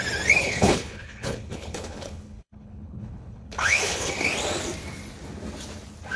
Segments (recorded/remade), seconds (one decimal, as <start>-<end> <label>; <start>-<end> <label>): 0.0-0.4 recorded; 0.4-4.1 remade; 4.1-6.2 recorded